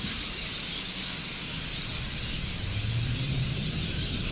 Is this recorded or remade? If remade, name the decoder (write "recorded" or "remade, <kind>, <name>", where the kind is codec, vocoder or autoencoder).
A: recorded